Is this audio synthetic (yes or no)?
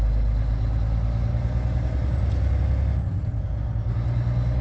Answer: no